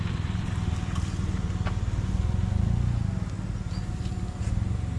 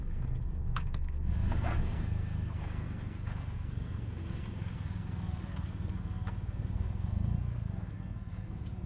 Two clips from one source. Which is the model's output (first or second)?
second